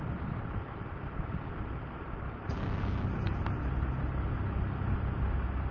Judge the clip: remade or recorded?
recorded